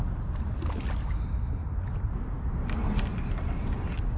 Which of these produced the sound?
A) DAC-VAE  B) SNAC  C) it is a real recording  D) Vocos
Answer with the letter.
C